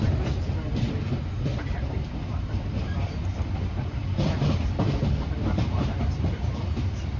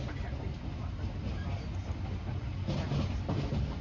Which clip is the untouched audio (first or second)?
second